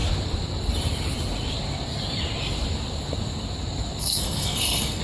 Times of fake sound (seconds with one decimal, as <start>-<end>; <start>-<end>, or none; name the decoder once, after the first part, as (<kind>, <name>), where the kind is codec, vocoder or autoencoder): 4.0-5.0 (codec, SNAC)